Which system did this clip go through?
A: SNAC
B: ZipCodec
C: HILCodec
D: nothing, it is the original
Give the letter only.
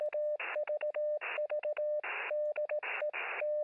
D